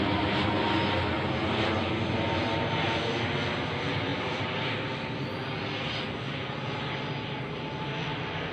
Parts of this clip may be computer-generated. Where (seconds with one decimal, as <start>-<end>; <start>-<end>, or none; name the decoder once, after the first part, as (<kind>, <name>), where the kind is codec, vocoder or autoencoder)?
none